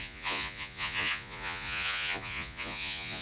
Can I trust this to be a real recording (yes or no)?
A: no